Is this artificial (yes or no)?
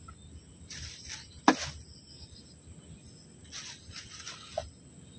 no